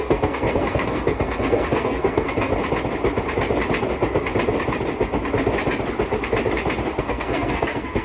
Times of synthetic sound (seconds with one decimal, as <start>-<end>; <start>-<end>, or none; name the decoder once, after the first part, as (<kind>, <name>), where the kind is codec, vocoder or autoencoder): 0.0-2.5 (codec, SNAC); 7.0-8.0